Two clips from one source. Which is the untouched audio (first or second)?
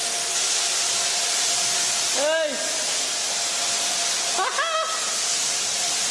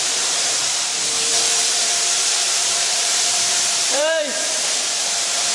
first